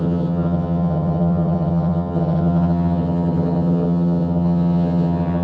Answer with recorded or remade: remade